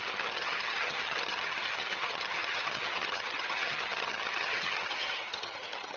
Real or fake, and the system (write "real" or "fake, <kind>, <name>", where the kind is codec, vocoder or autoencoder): fake, vocoder, HiFi-GAN